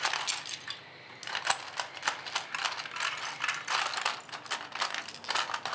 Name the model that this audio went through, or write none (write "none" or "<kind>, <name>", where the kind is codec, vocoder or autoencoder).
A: none